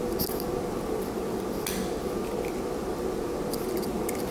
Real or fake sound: real